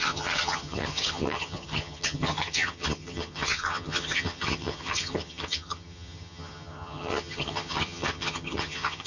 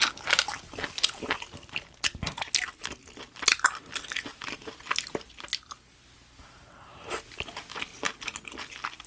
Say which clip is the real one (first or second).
second